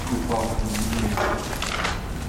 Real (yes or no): yes